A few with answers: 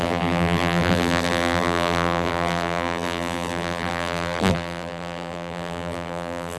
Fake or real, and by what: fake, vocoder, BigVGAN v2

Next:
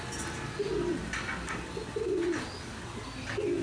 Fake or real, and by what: real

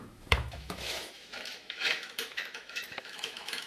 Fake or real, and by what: fake, autoencoder, DAC-VAE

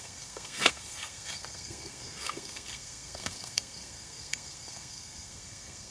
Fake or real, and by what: fake, codec, SNAC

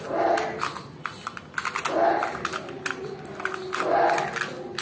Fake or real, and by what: real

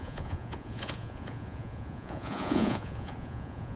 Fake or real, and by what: fake, vocoder, Vocos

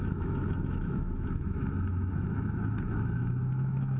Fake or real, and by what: fake, autoencoder, DAC-VAE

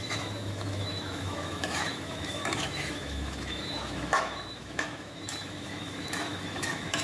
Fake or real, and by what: fake, autoencoder, DAC-VAE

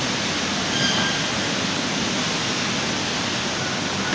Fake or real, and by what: real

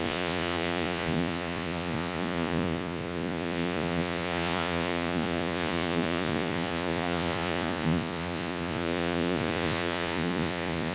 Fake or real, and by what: fake, vocoder, Vocos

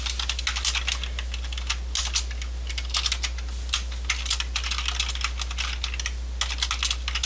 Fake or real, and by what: real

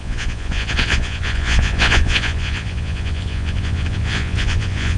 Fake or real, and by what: fake, vocoder, Vocos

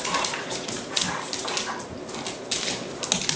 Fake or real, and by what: real